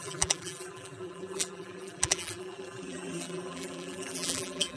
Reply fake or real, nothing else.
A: fake